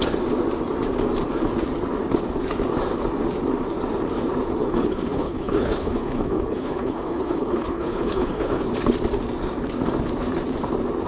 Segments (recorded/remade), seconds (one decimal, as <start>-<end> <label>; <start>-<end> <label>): 0.0-4.6 recorded; 4.6-8.7 remade; 8.7-11.1 recorded